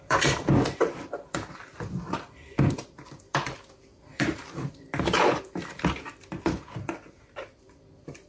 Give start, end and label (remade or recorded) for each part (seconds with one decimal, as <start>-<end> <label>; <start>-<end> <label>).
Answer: 0.0-8.3 remade